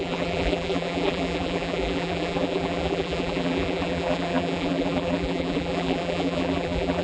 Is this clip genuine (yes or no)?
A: no